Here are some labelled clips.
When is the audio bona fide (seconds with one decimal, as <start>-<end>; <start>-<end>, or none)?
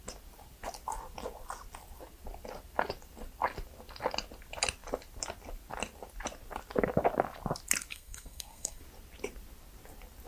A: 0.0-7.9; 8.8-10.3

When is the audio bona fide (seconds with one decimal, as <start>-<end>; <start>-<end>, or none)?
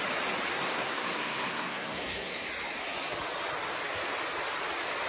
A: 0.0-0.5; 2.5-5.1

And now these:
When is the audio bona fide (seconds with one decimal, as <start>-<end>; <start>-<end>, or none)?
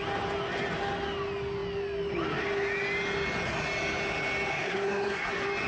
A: 0.0-4.5; 5.3-5.7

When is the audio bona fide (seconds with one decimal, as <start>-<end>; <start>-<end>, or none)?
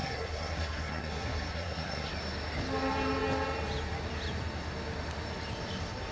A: 2.1-6.1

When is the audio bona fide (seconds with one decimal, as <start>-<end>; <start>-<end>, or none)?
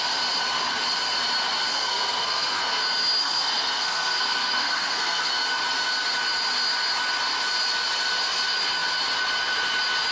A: 0.0-1.7; 2.8-3.2; 5.3-10.1